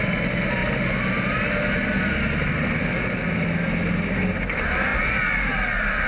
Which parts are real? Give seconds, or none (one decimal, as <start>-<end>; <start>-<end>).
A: 0.0-6.1